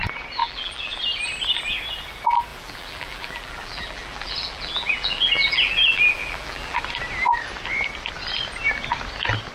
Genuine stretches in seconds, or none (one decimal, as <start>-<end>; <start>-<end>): 0.0-0.4; 1.0-2.5; 6.8-9.5